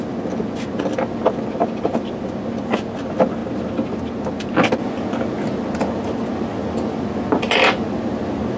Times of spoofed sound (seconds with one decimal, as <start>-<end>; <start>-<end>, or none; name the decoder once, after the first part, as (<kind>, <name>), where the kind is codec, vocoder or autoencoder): none